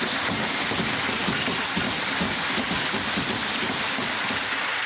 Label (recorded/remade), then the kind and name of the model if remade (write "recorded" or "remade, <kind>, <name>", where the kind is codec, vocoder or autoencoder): recorded